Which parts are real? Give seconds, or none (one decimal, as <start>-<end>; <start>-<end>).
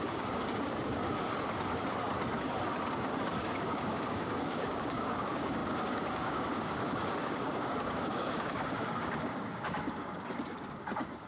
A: 1.0-3.4